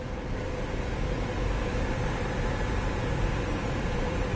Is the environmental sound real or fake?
real